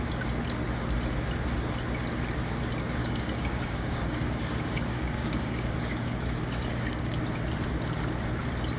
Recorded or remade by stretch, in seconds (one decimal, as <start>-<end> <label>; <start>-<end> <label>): 0.0-3.0 recorded; 3.0-7.2 remade; 7.2-8.8 recorded